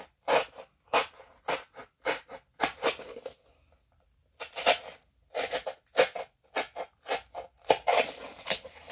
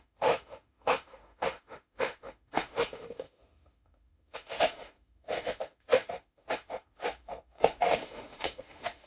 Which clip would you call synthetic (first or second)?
second